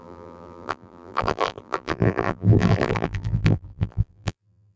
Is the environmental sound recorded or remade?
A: remade